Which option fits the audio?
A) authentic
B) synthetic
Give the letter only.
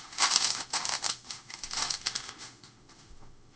B